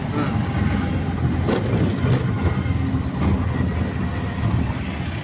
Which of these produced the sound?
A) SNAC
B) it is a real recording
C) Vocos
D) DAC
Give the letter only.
B